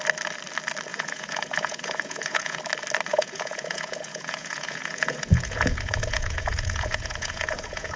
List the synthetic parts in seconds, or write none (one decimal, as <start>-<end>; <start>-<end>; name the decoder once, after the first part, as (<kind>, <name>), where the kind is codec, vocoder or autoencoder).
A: 0.9-2.6 (vocoder, Vocos); 3.1-8.0